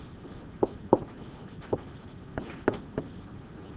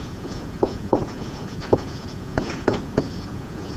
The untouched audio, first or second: first